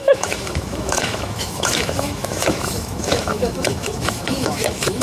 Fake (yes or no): yes